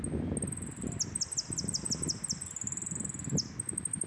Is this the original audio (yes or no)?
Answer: yes